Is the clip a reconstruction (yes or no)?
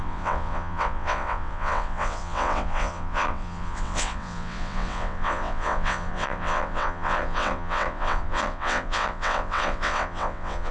yes